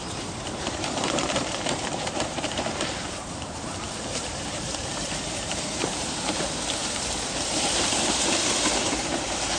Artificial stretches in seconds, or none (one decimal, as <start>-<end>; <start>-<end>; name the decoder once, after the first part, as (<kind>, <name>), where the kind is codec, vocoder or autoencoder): 0.0-9.6 (vocoder, BigVGAN v2)